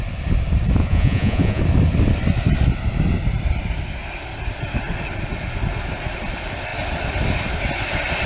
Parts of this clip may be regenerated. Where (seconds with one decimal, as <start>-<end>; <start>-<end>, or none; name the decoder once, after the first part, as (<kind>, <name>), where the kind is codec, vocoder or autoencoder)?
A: 0.8-1.6 (vocoder, Vocos)